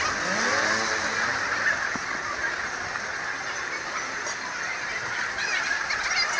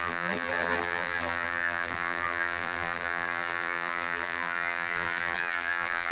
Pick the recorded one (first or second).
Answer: first